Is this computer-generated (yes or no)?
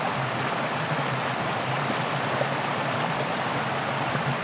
no